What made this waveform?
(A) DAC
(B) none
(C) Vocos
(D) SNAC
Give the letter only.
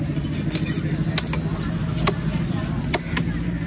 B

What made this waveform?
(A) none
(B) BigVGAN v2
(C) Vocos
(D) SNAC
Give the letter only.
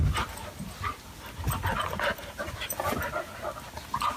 A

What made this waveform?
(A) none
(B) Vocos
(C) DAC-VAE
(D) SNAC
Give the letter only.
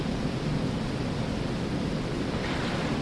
A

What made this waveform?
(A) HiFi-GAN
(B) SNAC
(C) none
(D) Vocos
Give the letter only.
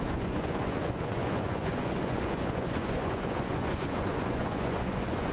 D